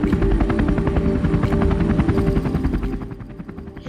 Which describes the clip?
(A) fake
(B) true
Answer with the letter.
B